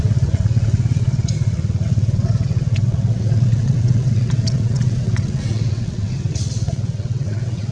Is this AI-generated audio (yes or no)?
yes